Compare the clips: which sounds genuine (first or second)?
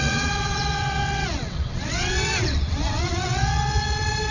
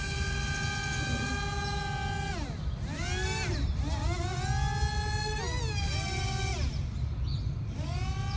second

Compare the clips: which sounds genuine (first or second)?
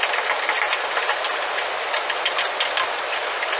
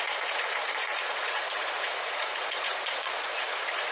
first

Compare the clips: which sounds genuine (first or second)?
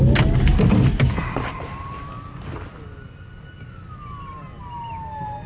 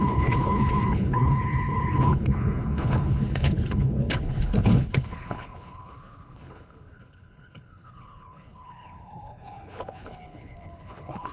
first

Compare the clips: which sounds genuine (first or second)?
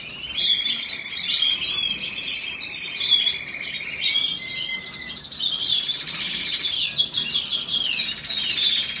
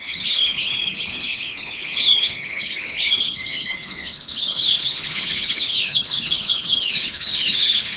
first